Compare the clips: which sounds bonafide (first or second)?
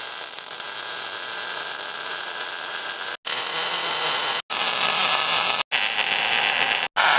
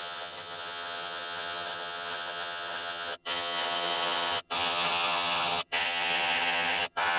first